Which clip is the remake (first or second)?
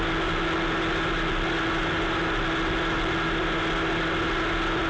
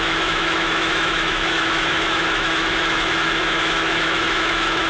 second